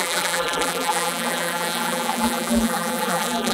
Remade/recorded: remade